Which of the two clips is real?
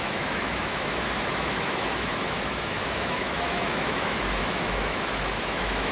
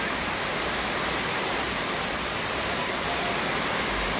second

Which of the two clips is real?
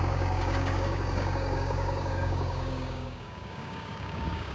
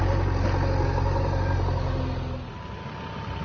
second